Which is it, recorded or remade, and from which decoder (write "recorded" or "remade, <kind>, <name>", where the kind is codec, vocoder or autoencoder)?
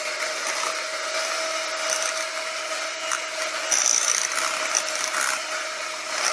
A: recorded